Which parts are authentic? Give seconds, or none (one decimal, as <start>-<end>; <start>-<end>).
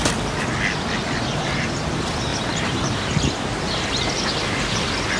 0.0-1.3; 1.9-2.3; 4.4-5.2